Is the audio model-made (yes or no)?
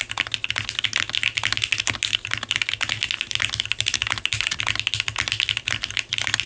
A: no